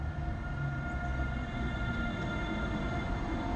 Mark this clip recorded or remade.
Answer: recorded